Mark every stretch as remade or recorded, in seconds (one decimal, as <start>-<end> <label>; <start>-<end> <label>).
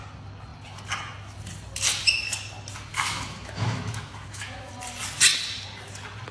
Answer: 0.0-2.9 recorded; 2.9-4.7 remade; 4.7-6.3 recorded